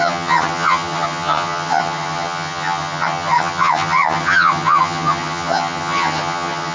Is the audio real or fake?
fake